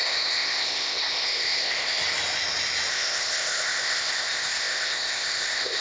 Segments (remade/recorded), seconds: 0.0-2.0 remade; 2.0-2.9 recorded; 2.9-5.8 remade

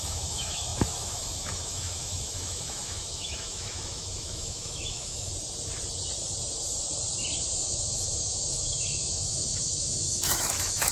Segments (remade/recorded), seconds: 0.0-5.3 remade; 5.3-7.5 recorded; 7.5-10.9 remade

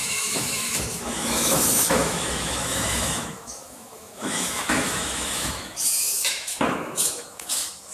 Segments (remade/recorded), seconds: 0.0-7.9 remade

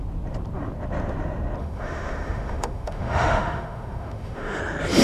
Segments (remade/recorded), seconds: 0.0-1.6 recorded; 1.6-4.6 remade; 4.6-5.0 recorded